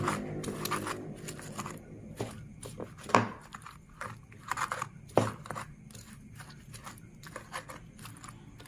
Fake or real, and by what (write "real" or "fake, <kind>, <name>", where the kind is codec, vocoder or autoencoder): real